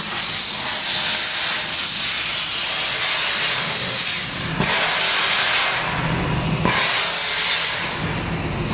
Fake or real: real